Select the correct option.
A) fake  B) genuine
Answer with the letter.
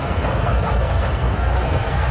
A